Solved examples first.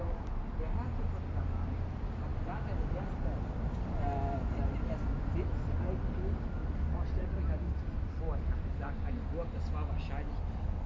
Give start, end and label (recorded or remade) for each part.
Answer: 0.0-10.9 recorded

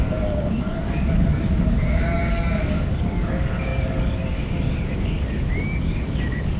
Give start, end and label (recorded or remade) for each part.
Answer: 0.0-6.6 remade

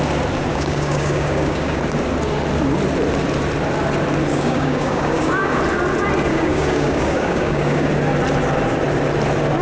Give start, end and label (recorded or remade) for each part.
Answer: 0.0-0.5 recorded; 0.5-1.8 remade; 1.8-4.3 recorded; 4.3-5.6 remade; 5.6-6.3 recorded; 6.3-7.9 remade; 7.9-9.6 recorded

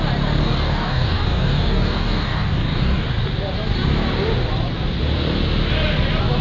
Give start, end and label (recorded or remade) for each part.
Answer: 0.0-0.4 recorded; 0.4-3.1 remade; 3.1-6.4 recorded